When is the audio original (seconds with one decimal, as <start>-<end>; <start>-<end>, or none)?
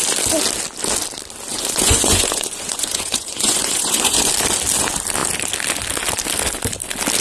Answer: 0.0-1.5; 4.3-7.2